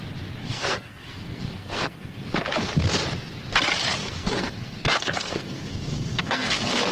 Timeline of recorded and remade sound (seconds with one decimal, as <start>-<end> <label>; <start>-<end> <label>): 0.0-0.4 recorded; 0.4-2.7 remade; 2.7-4.0 recorded; 4.0-6.9 remade